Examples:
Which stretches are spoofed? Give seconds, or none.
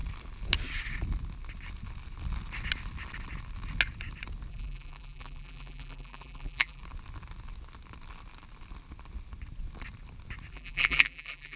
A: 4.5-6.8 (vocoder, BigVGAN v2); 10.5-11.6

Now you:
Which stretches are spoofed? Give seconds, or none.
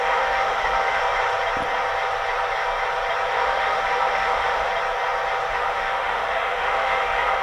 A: 0.0-1.0 (autoencoder, DAC-VAE); 3.3-4.7; 5.5-7.4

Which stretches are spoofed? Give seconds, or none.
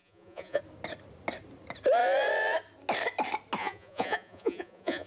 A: 0.0-0.6 (vocoder, Vocos); 3.6-5.1